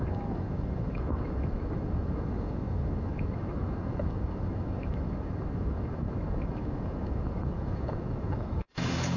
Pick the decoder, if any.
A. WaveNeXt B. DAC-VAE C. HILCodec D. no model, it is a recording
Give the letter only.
B